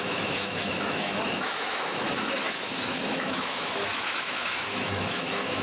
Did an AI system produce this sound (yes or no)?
yes